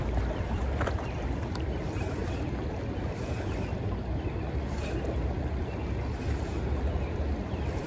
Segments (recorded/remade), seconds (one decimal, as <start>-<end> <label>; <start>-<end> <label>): 0.0-2.2 remade; 2.2-6.8 recorded; 6.8-7.9 remade